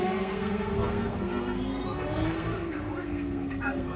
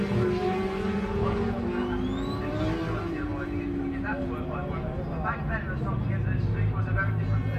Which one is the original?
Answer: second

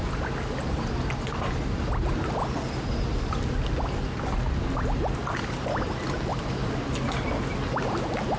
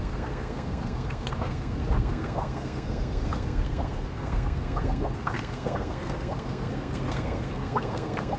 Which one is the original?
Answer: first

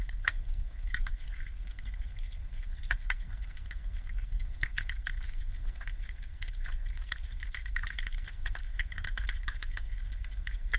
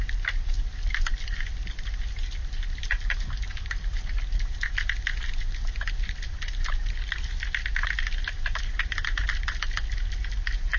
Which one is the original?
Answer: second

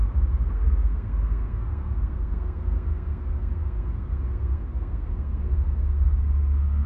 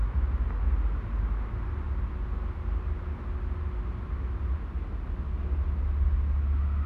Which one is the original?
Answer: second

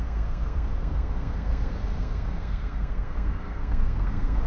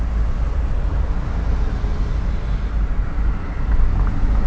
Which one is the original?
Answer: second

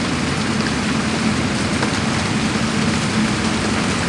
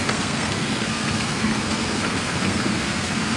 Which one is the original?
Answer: first